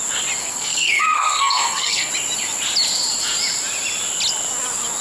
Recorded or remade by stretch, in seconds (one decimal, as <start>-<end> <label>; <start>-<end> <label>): 0.0-0.4 recorded; 0.4-2.1 remade; 2.1-5.0 recorded